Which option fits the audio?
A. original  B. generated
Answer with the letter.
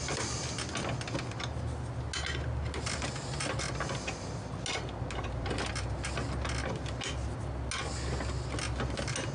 A